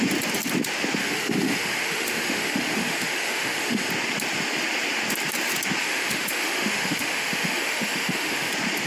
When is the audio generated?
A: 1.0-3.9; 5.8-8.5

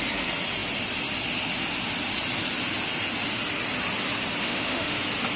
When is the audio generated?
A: 4.4-5.0

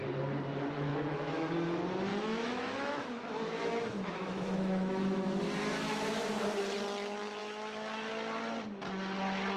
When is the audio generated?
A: 0.9-1.5; 2.1-5.4; 7.4-8.1

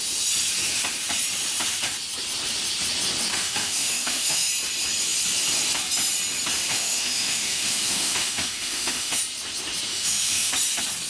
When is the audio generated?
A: 3.3-4.5; 6.7-9.2; 9.9-10.5

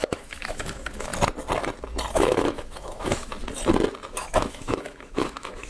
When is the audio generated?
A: 0.0-1.1; 2.1-3.3; 4.1-5.7